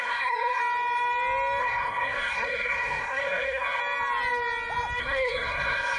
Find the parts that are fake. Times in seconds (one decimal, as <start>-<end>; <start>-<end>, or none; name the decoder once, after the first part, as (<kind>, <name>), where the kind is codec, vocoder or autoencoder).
0.0-0.6 (codec, SNAC); 1.6-3.8; 5.0-6.0